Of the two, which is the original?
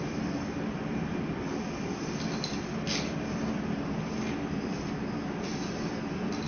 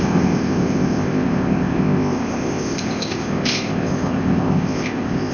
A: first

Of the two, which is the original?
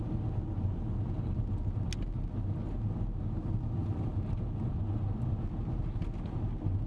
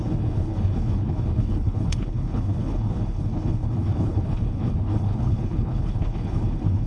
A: first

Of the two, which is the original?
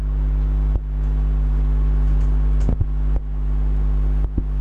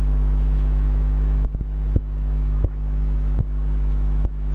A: first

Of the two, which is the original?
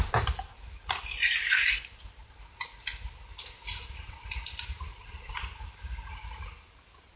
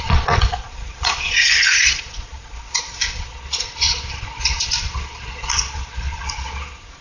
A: first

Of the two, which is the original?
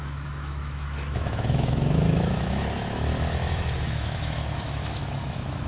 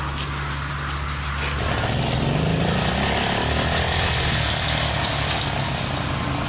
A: second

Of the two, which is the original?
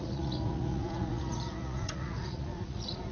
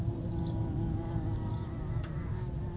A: second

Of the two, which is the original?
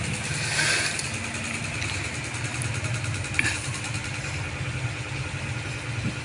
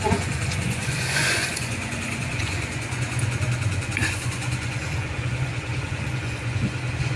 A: first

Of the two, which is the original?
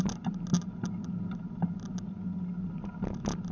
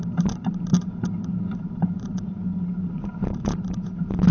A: first